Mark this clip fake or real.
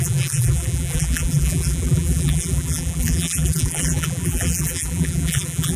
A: fake